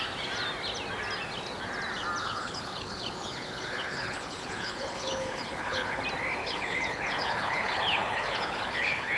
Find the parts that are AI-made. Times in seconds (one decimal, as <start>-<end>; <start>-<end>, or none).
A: 2.2-6.0; 6.4-9.2